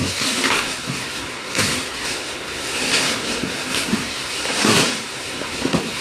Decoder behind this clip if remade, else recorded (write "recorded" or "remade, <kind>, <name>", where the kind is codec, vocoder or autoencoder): remade, codec, SNAC